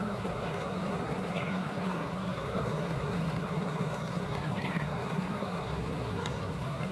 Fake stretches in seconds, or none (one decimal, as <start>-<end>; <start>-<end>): 0.0-6.9